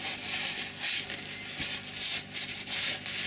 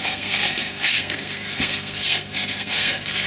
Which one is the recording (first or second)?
first